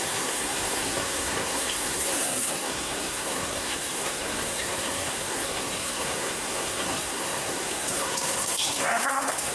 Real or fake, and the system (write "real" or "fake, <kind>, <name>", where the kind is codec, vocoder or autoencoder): fake, codec, SNAC